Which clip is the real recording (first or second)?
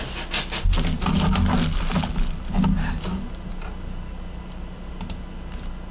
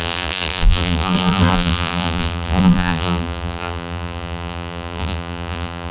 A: first